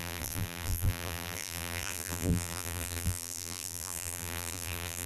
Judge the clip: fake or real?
fake